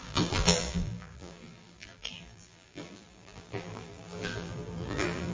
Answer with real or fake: fake